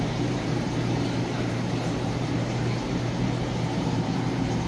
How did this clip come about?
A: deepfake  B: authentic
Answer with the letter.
A